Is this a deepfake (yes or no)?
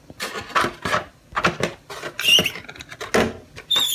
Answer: no